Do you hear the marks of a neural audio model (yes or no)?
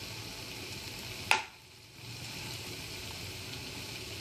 no